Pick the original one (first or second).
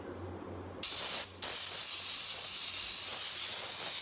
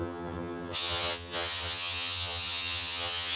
first